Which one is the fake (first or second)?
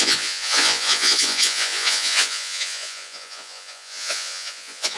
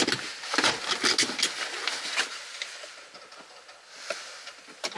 first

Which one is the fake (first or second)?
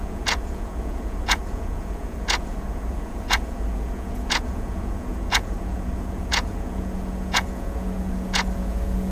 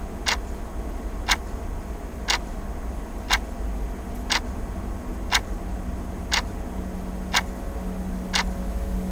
first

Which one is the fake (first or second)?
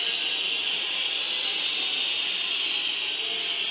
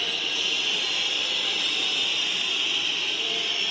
second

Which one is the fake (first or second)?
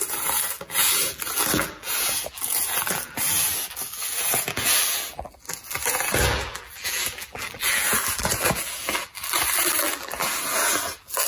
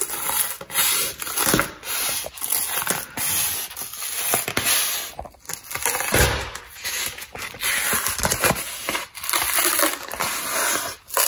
first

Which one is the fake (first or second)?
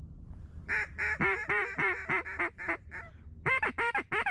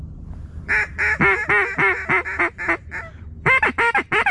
first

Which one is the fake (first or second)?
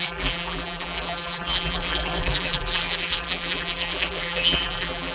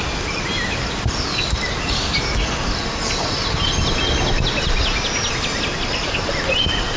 first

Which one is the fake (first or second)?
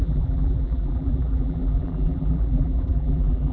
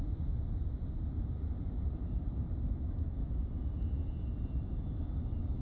first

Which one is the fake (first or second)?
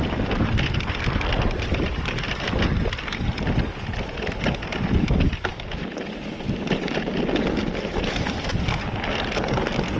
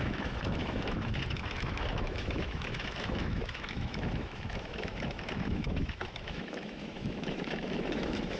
second